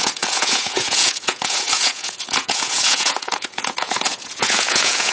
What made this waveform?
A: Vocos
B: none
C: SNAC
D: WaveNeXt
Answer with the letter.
A